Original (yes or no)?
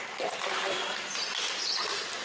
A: yes